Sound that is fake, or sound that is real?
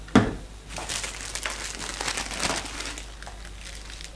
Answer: real